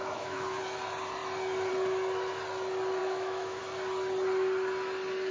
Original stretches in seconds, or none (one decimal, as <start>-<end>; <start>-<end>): 0.6-3.0; 3.6-5.3